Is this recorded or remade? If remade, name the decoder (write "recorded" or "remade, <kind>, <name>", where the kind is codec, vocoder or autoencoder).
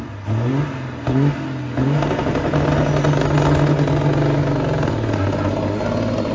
recorded